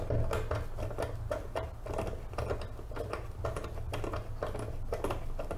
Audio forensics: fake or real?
real